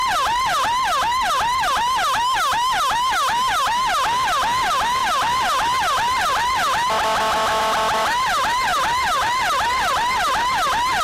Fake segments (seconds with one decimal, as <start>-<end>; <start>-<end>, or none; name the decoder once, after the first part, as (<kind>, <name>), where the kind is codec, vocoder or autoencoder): none